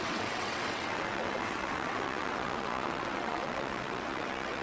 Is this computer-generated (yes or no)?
yes